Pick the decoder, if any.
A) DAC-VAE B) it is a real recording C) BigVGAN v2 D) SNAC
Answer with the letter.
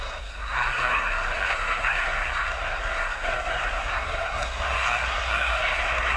D